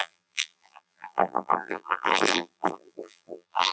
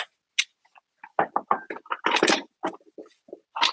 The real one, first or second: second